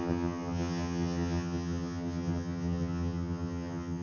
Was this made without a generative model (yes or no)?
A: no